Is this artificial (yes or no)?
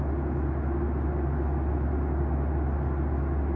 no